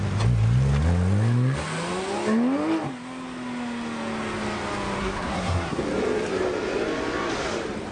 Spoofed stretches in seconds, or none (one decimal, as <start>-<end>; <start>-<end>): 5.0-5.8